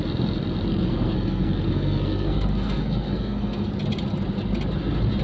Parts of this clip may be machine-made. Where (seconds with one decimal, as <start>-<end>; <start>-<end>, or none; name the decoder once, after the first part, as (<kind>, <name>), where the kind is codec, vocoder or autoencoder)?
0.7-3.7 (codec, SNAC)